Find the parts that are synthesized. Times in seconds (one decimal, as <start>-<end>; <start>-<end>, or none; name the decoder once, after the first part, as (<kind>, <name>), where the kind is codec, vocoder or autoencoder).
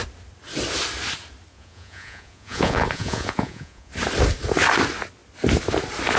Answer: 1.5-3.9 (vocoder, Vocos)